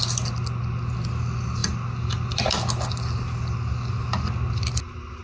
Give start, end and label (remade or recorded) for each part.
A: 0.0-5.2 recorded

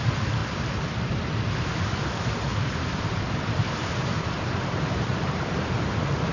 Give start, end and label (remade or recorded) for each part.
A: 0.0-0.4 recorded; 0.4-1.1 remade; 1.1-2.5 recorded; 2.5-5.7 remade; 5.7-6.3 recorded

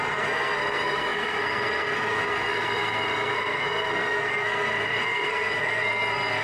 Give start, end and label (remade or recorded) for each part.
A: 0.0-6.4 remade

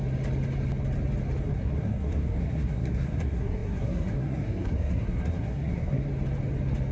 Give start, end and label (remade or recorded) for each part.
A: 0.0-1.4 recorded; 1.4-6.1 remade; 6.1-6.9 recorded